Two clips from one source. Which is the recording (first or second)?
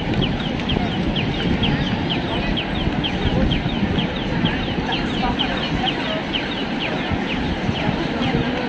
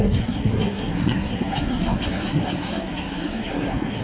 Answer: first